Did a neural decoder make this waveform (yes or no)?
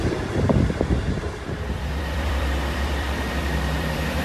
yes